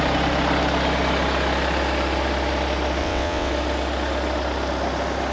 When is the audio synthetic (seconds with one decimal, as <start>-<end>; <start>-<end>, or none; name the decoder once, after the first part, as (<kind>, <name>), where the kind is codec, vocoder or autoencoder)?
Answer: 3.0-3.5 (vocoder, WaveNeXt)